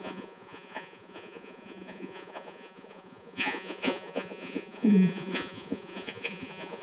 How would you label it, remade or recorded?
remade